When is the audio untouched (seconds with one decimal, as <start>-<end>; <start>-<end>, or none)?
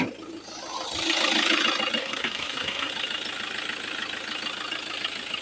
0.0-2.0; 2.9-5.4